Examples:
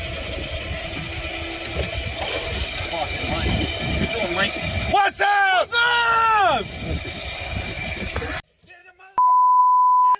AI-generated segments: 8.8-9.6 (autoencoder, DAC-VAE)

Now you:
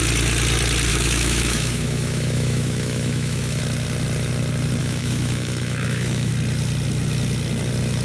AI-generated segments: 0.9-3.6 (autoencoder, DAC-VAE); 4.8-6.3

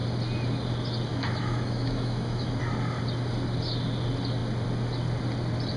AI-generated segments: 1.1-2.6 (autoencoder, DAC-VAE)

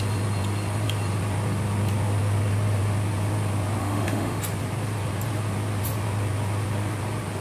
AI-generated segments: 3.8-4.4 (autoencoder, DAC-VAE)

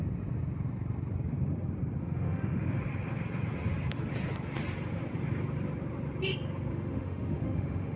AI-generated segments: 2.0-2.7 (autoencoder, DAC-VAE); 6.7-8.0

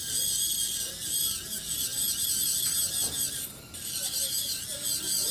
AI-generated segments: none

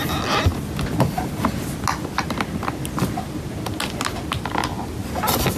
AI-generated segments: none

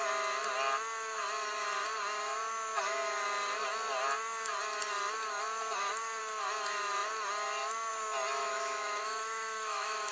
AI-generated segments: 8.4-10.1 (autoencoder, DAC-VAE)